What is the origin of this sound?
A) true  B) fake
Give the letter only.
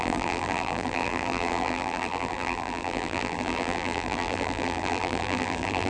B